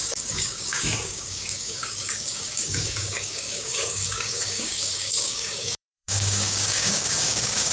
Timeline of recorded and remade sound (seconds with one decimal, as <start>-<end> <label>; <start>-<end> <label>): 0.0-7.7 remade